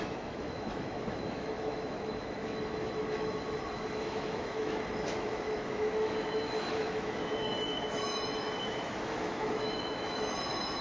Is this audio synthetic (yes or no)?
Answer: yes